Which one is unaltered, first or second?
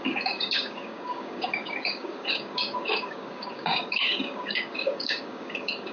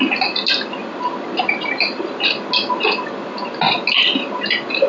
second